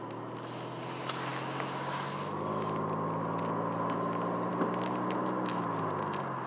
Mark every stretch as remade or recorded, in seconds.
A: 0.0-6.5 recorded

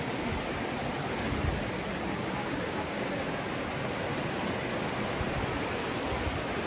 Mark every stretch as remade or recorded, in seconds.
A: 0.0-2.4 recorded; 2.4-3.1 remade; 3.1-6.7 recorded

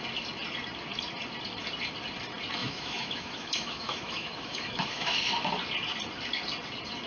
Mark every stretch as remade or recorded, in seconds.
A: 0.0-2.6 recorded; 2.6-5.2 remade; 5.2-7.1 recorded